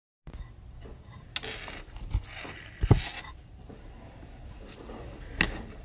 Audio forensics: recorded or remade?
recorded